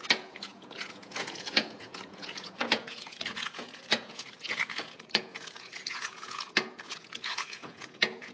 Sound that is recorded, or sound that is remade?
remade